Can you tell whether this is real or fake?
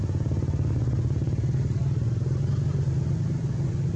real